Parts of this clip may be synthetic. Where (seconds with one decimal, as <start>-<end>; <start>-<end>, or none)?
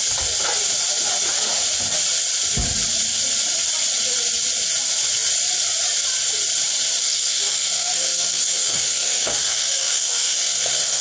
7.0-11.0